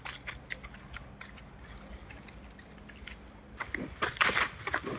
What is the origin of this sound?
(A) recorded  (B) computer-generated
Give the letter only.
A